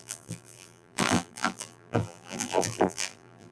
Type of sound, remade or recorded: remade